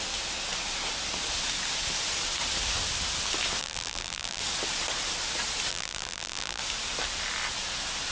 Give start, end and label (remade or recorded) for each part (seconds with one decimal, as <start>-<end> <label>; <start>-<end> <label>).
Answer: 0.0-3.6 recorded; 3.6-4.4 remade; 4.4-5.7 recorded; 5.7-6.6 remade; 6.6-8.1 recorded